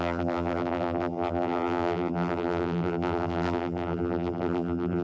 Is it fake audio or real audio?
fake